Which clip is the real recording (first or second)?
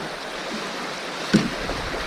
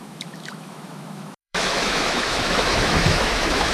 first